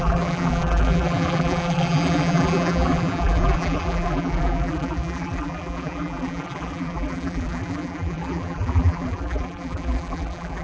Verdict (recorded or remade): remade